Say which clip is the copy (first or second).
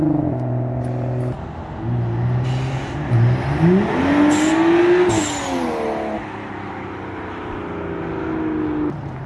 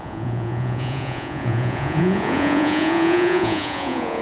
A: second